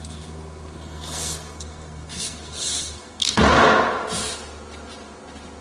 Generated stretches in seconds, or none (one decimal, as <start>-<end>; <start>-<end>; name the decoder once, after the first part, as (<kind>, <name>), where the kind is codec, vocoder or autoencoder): 0.0-3.4 (codec, SNAC)